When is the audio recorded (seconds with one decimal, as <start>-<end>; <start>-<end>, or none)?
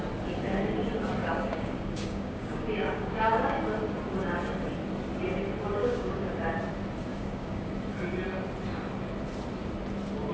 0.0-1.2; 3.6-5.8; 6.3-7.1; 7.7-10.3